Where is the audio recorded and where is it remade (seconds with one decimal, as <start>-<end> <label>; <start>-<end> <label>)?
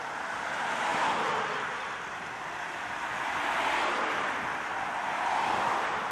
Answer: 0.0-6.1 recorded